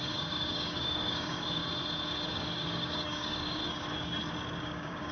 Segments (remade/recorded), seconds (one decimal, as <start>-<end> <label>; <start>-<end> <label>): 0.0-1.6 remade; 1.6-2.3 recorded; 2.3-3.6 remade; 3.6-4.6 recorded; 4.6-5.1 remade